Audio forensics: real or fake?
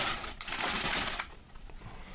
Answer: fake